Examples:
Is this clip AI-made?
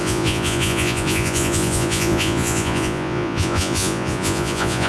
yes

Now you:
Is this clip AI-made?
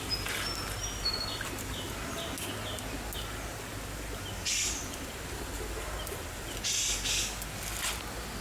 no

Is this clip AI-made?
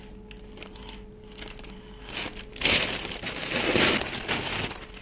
no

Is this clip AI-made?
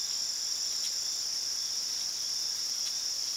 no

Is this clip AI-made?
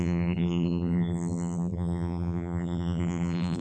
yes